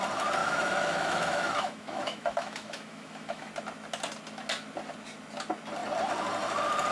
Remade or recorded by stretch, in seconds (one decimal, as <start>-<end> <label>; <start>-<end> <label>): 0.0-0.4 recorded; 0.4-3.5 remade; 3.5-6.9 recorded